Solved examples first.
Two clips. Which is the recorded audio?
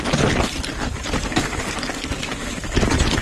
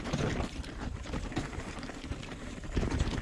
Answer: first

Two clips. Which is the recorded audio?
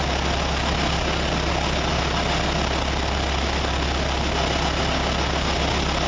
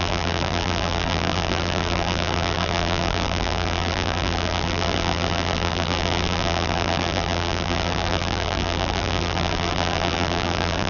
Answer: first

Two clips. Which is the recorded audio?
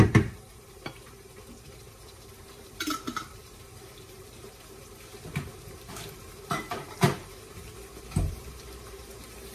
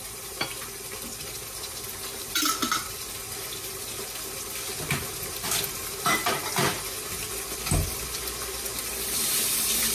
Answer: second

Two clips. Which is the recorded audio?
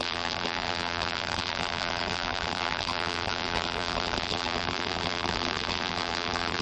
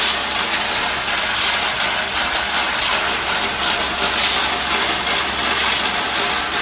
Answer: second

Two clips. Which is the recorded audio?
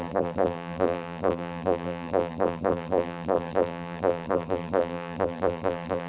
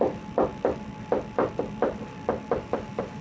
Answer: second